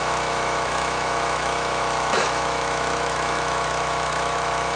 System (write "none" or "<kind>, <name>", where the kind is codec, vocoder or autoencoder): autoencoder, DAC-VAE